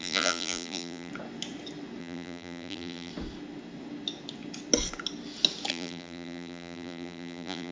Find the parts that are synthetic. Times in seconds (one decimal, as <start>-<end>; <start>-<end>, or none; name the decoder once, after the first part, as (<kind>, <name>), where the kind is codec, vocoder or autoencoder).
0.0-1.1 (vocoder, BigVGAN v2); 2.0-3.1; 5.7-7.7